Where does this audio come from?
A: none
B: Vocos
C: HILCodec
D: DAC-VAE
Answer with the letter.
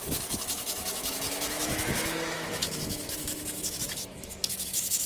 D